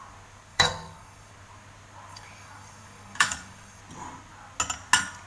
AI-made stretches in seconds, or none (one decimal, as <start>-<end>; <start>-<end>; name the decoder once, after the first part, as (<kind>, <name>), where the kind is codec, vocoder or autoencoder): 0.5-1.3 (codec, DAC); 2.1-3.8